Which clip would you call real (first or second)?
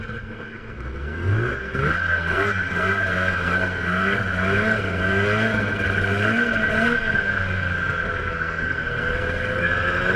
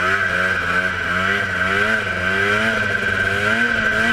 second